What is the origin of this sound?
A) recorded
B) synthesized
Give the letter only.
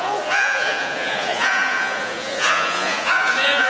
B